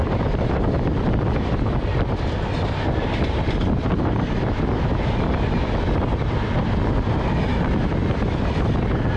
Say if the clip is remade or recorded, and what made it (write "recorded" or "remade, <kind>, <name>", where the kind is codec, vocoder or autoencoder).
recorded